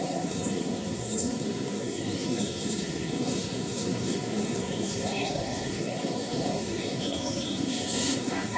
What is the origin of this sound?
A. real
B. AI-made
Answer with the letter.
B